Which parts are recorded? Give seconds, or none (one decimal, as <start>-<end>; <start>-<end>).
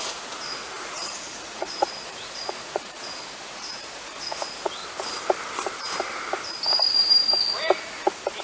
4.8-8.4